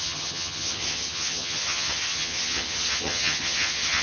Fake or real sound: fake